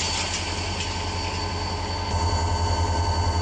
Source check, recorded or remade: recorded